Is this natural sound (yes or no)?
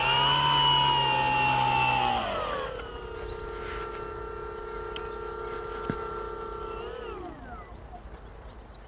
yes